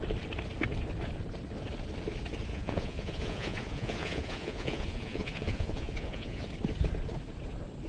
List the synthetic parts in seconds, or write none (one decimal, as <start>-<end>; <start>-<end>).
2.5-6.5